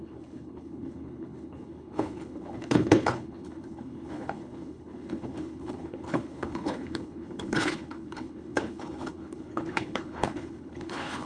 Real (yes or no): no